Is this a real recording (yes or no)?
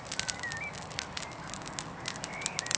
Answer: yes